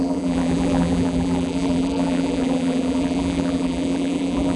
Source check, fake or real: fake